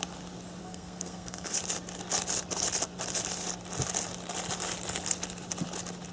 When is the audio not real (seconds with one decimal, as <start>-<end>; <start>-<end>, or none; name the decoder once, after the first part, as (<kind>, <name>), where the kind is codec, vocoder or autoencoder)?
0.6-1.6 (codec, SNAC)